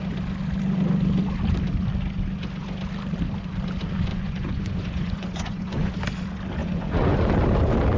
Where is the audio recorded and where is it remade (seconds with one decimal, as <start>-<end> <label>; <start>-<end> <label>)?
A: 0.0-4.1 recorded; 4.1-5.9 remade; 5.9-6.6 recorded; 6.6-7.3 remade; 7.3-8.0 recorded

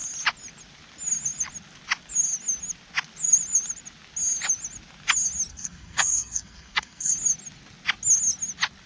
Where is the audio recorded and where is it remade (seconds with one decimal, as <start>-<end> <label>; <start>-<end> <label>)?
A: 0.0-5.5 recorded; 5.5-7.1 remade; 7.1-8.9 recorded

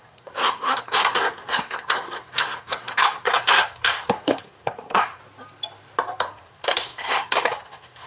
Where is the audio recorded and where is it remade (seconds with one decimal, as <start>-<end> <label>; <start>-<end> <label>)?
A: 0.0-5.2 remade; 5.2-6.2 recorded; 6.2-8.1 remade

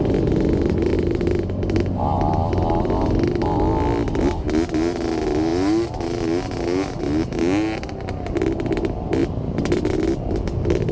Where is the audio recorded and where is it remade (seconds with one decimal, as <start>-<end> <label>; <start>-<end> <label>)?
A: 0.0-10.9 recorded

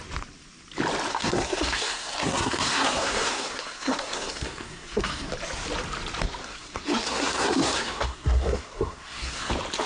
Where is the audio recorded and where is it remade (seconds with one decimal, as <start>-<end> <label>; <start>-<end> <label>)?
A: 0.0-1.1 recorded; 1.1-5.3 remade; 5.3-6.4 recorded; 6.4-9.5 remade; 9.5-9.9 recorded

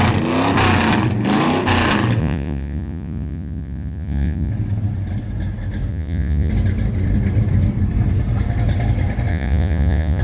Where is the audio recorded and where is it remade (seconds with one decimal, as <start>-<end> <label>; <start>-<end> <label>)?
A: 0.0-2.2 recorded; 2.2-4.5 remade; 4.5-5.9 recorded; 5.9-6.5 remade; 6.5-9.3 recorded; 9.3-10.2 remade